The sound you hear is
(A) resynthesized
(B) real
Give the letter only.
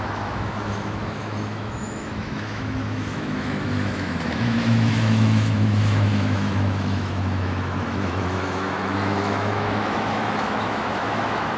A